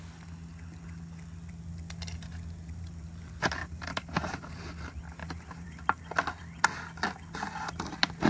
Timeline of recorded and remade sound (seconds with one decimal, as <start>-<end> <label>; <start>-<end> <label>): 0.0-3.6 recorded; 3.6-4.6 remade; 4.6-5.2 recorded; 5.2-5.8 remade; 5.8-8.3 recorded